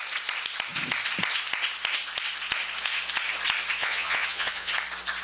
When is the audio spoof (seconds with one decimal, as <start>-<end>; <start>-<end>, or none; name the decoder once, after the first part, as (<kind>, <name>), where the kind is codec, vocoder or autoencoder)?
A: 3.8-4.7 (vocoder, Vocos)